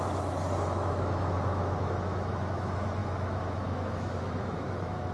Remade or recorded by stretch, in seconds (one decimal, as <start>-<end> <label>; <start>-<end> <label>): 0.0-5.1 remade

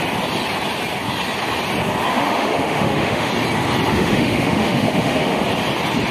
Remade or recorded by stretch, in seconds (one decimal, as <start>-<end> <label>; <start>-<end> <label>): 0.0-2.1 recorded; 2.1-3.3 remade; 3.3-3.9 recorded; 3.9-5.4 remade; 5.4-6.1 recorded

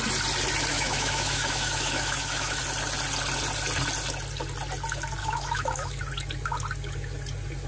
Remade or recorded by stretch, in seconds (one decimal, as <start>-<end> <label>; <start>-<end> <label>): 0.0-0.7 recorded; 0.7-2.6 remade; 2.6-5.2 recorded; 5.2-6.0 remade; 6.0-7.7 recorded

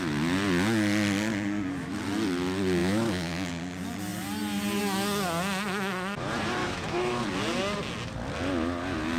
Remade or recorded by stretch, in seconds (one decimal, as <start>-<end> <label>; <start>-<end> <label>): 0.0-2.8 recorded; 2.8-3.5 remade; 3.5-6.6 recorded; 6.6-7.2 remade; 7.2-9.2 recorded

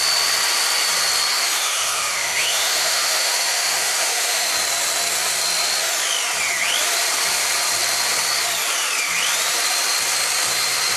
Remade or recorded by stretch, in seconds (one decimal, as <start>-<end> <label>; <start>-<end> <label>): 0.0-1.3 recorded; 1.3-4.5 remade; 4.5-11.0 recorded

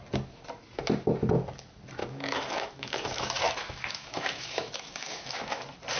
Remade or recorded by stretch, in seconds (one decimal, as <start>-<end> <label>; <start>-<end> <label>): 0.0-2.0 recorded; 2.0-5.6 remade; 5.6-6.0 recorded

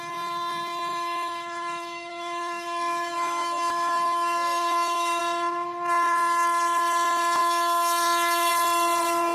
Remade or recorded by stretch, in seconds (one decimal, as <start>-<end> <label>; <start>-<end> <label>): 0.0-0.9 recorded; 0.9-5.2 remade; 5.2-7.4 recorded; 7.4-8.5 remade; 8.5-9.3 recorded